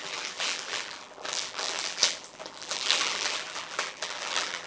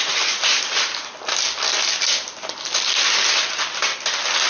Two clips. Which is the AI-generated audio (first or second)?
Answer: first